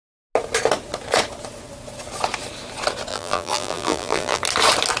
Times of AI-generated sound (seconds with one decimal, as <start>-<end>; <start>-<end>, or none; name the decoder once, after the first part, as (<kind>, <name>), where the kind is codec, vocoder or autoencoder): 3.1-4.4 (vocoder, BigVGAN v2)